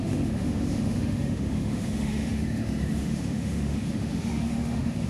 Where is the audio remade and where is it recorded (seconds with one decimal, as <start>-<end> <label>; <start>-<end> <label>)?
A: 0.0-5.1 remade